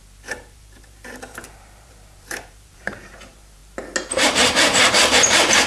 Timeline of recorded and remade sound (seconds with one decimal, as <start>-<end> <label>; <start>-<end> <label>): 0.0-3.6 remade; 3.6-4.1 recorded; 4.1-5.7 remade